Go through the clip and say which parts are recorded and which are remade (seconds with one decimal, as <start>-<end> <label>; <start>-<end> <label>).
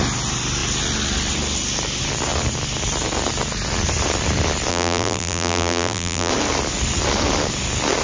0.0-4.7 recorded; 4.7-6.3 remade; 6.3-8.0 recorded